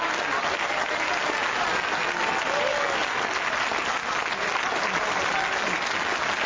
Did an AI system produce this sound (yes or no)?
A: no